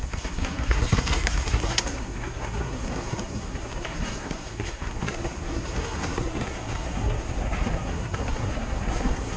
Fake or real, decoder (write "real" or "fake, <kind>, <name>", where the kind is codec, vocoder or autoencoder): fake, codec, SNAC